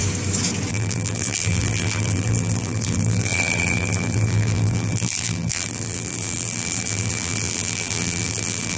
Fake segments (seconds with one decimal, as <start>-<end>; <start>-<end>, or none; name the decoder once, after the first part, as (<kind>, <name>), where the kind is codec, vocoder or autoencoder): 0.7-8.8 (vocoder, BigVGAN v2)

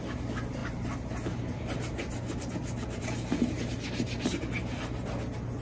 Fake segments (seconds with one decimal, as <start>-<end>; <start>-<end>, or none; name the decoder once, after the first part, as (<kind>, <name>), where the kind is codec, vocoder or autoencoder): none

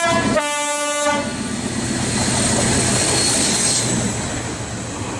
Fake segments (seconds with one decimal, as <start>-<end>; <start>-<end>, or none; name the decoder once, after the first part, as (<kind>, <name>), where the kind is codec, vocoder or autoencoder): none

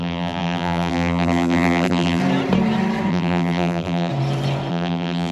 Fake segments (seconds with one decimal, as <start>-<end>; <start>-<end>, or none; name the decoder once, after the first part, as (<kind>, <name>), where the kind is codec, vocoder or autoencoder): 0.0-2.2 (vocoder, BigVGAN v2); 3.1-4.1; 4.7-5.3

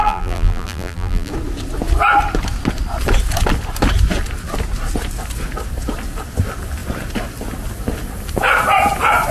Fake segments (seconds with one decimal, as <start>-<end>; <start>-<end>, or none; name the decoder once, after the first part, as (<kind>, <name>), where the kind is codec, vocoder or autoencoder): 0.0-1.3 (vocoder, BigVGAN v2)

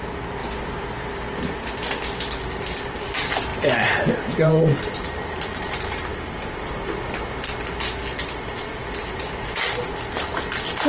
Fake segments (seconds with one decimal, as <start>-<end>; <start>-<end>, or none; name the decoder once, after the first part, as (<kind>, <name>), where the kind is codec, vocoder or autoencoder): 3.5-7.1 (vocoder, BigVGAN v2)

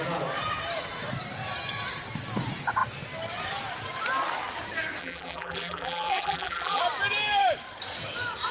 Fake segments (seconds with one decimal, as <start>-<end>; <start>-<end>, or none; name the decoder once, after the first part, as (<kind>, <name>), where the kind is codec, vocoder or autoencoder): 5.0-6.8 (vocoder, BigVGAN v2)